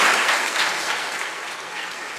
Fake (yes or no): yes